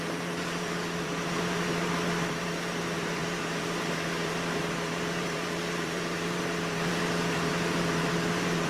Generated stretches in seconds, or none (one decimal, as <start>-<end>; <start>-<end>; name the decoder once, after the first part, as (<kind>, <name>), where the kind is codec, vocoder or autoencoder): 0.0-8.7 (vocoder, BigVGAN v2)